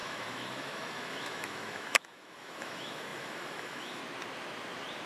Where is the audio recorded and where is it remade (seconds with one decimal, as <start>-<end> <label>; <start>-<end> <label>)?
0.0-4.0 remade; 4.0-5.1 recorded